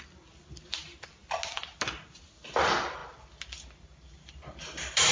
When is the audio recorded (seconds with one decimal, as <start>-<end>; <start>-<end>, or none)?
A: 0.0-5.1